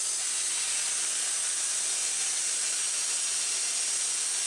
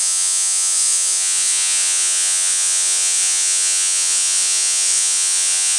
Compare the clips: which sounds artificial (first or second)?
second